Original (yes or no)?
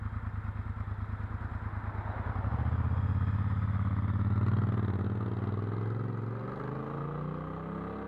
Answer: yes